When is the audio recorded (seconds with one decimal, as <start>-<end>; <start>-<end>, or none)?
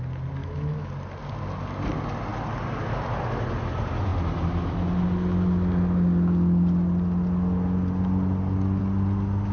0.0-0.4; 0.9-9.5